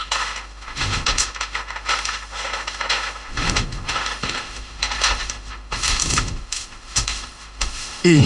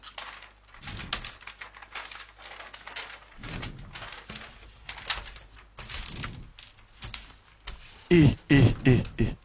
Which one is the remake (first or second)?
first